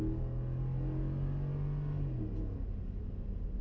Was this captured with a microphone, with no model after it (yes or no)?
yes